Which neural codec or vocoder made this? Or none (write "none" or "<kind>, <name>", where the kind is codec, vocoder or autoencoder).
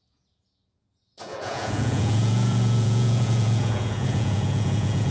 vocoder, Vocos